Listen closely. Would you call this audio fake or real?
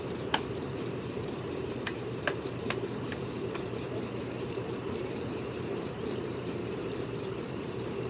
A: fake